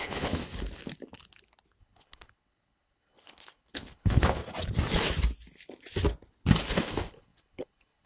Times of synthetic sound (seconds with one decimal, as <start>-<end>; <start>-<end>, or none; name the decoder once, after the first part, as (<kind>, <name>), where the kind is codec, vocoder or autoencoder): 0.0-0.4 (codec, HILCodec); 1.8-4.4; 6.7-8.1